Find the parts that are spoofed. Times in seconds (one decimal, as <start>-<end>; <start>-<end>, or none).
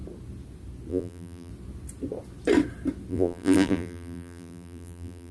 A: 0.9-1.5; 3.1-5.3